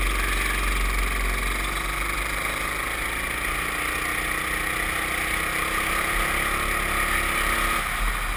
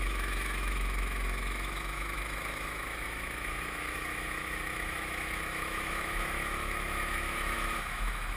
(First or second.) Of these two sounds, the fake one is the second